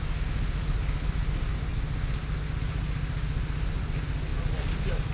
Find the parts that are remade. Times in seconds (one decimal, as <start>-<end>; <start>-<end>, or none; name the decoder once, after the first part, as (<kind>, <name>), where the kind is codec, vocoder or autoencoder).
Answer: none